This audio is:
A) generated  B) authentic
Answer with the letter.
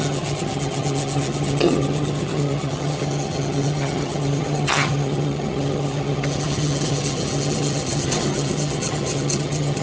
A